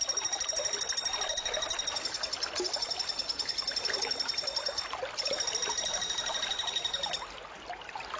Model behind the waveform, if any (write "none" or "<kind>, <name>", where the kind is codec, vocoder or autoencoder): none